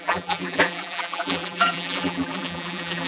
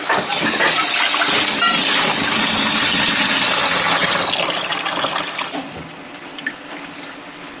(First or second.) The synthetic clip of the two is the first